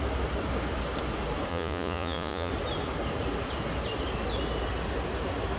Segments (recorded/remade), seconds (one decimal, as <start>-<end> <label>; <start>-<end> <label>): 0.0-1.5 recorded; 1.5-2.5 remade; 2.5-5.6 recorded